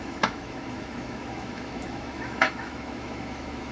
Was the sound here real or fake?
fake